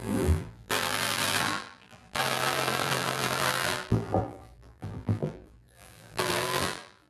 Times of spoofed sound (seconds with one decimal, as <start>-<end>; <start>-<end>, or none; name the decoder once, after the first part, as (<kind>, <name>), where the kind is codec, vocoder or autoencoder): 0.0-7.1 (vocoder, BigVGAN v2)